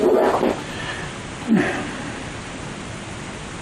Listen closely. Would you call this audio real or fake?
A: real